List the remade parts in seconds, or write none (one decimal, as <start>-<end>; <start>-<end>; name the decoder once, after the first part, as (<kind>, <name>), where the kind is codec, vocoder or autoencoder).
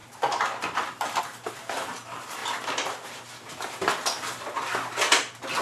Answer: 1.2-2.4 (vocoder, BigVGAN v2)